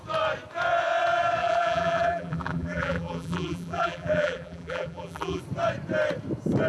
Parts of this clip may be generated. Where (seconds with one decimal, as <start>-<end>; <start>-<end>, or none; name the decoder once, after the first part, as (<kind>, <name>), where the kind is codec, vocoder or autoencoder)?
1.4-5.4 (vocoder, BigVGAN v2)